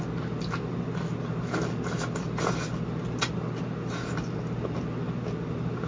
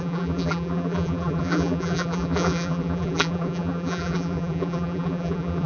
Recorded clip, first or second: first